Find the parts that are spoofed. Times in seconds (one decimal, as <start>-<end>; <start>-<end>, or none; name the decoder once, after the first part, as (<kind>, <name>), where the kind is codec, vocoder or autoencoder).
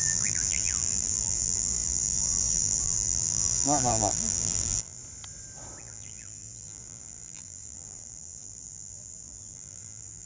0.0-5.0 (vocoder, BigVGAN v2); 5.8-10.3